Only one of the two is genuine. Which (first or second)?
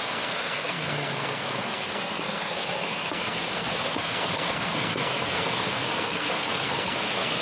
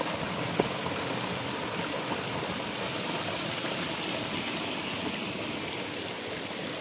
second